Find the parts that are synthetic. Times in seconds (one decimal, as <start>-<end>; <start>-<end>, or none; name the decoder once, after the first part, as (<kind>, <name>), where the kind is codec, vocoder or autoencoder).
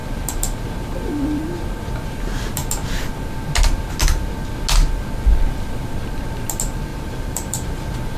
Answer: 6.9-7.7 (vocoder, BigVGAN v2)